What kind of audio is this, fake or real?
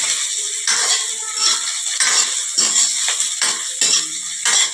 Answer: real